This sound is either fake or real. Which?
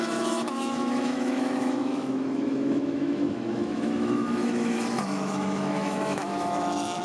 fake